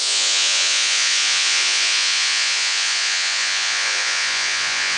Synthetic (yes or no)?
yes